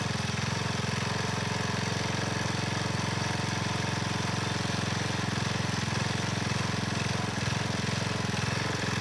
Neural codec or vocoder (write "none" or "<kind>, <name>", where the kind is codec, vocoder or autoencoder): none